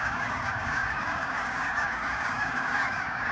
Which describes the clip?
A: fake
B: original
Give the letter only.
A